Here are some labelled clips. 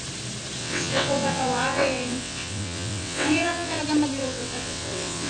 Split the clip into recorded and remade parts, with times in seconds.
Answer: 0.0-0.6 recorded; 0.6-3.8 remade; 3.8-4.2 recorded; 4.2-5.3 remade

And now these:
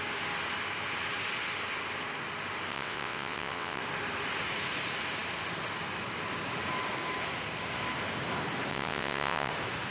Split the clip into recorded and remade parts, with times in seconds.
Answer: 0.0-2.7 recorded; 2.7-3.8 remade; 3.8-8.7 recorded; 8.7-9.5 remade; 9.5-9.9 recorded

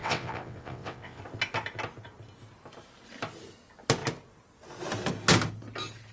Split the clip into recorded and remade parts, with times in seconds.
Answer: 0.0-1.2 remade; 1.2-6.1 recorded

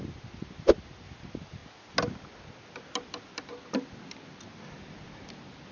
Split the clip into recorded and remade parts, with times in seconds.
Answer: 0.0-5.7 recorded

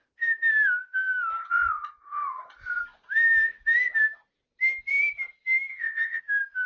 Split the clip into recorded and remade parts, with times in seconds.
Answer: 0.0-1.4 recorded; 1.4-2.8 remade; 2.8-5.7 recorded; 5.7-6.2 remade; 6.2-6.7 recorded

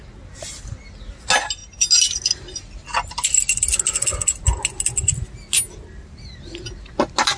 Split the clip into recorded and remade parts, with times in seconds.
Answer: 0.0-7.4 recorded

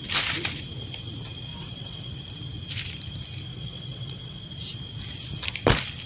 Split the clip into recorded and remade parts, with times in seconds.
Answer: 0.0-1.5 recorded; 1.5-2.1 remade; 2.1-3.5 recorded; 3.5-4.4 remade; 4.4-6.1 recorded

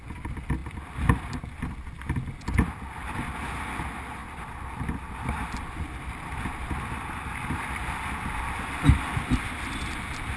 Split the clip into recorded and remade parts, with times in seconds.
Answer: 0.0-10.4 recorded